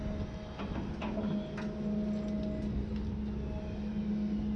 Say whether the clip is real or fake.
real